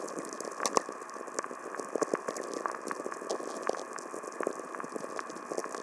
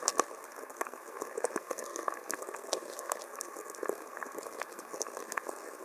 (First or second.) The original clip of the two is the first